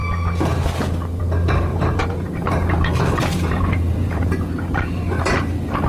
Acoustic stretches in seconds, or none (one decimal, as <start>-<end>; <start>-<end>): 0.0-1.7; 5.2-5.9